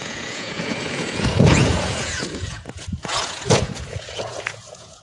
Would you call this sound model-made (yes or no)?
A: yes